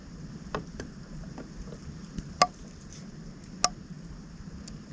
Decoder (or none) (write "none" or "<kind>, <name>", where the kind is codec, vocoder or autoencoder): none